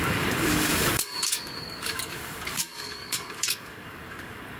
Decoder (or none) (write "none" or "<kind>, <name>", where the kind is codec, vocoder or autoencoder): codec, DAC